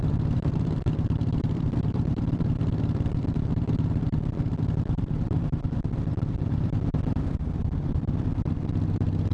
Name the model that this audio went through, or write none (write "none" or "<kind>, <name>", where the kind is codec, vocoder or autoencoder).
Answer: vocoder, BigVGAN v2